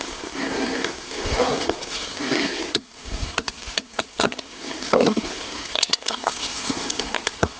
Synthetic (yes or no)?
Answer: yes